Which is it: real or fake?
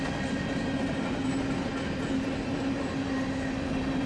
real